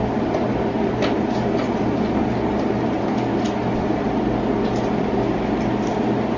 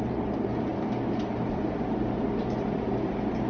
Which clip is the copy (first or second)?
second